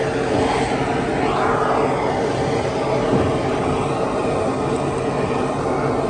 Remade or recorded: recorded